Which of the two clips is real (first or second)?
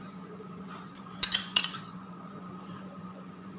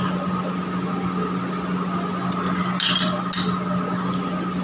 second